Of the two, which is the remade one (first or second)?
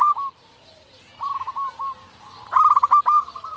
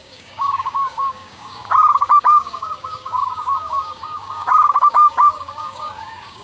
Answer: second